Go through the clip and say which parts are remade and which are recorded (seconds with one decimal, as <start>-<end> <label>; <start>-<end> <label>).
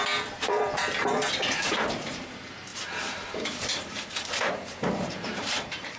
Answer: 0.0-6.0 remade